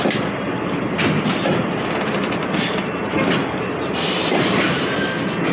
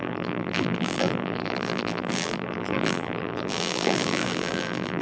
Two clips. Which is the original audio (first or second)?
first